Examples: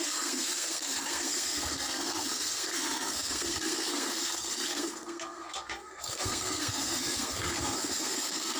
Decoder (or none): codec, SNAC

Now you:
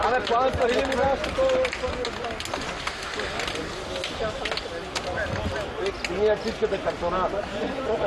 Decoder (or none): none